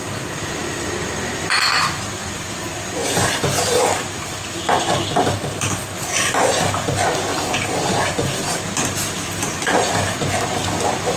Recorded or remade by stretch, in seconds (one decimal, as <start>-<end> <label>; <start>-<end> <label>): 0.0-2.2 recorded; 2.2-4.6 remade; 4.6-7.3 recorded; 7.3-8.7 remade; 8.7-11.2 recorded